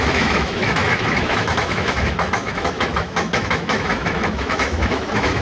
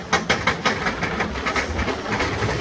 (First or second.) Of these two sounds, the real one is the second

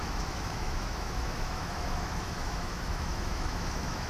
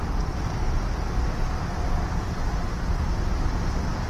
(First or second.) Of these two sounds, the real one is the second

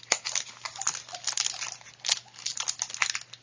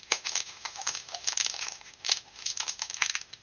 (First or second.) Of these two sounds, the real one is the first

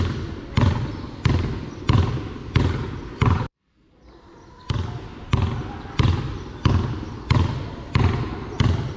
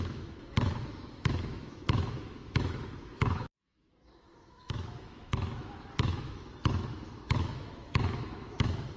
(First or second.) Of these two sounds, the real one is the first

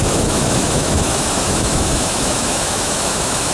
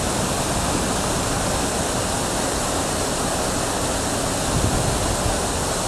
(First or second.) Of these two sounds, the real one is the second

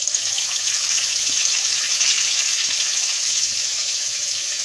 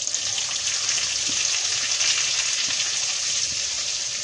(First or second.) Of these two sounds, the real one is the second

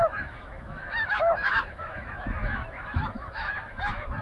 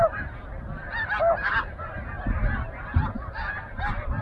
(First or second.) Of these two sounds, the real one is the second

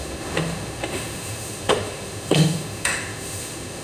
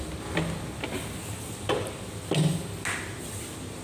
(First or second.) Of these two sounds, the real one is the second